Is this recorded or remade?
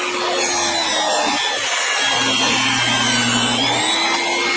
recorded